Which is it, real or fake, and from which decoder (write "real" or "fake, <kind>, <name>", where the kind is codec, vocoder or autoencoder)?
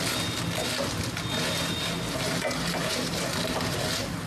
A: real